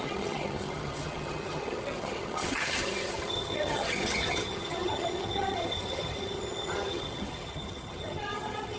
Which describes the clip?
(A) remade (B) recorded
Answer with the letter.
A